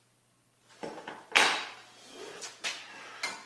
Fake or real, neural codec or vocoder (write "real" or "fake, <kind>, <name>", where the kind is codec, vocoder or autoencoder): real